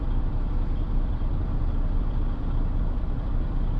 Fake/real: fake